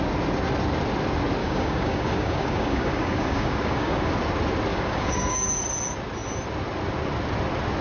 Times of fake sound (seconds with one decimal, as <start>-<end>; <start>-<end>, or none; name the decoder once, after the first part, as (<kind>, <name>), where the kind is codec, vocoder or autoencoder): 1.4-4.1 (codec, DAC); 4.7-5.6